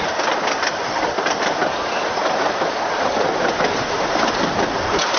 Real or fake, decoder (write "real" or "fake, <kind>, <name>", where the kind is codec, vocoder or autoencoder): real